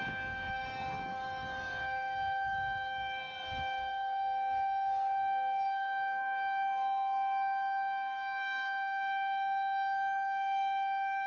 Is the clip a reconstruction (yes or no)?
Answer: yes